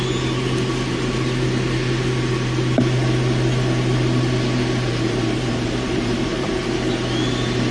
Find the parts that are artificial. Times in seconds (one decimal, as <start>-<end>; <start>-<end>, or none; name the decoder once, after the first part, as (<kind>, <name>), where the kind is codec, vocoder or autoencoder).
4.9-6.6 (vocoder, BigVGAN v2)